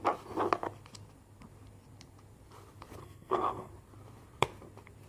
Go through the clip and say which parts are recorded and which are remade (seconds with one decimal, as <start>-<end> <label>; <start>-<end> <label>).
0.0-3.0 recorded; 3.0-3.7 remade; 3.7-5.1 recorded